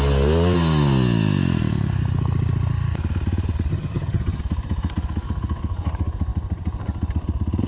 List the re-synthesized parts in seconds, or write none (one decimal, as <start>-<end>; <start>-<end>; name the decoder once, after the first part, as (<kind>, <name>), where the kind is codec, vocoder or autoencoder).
3.7-4.4 (vocoder, HiFi-GAN)